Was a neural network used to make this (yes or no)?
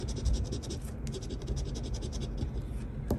no